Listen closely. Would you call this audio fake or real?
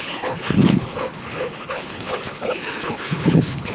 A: fake